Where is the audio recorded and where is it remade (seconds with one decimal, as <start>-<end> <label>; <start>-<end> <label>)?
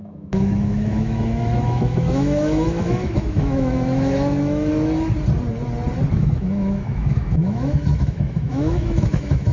0.0-4.7 remade; 4.7-6.1 recorded; 6.1-9.5 remade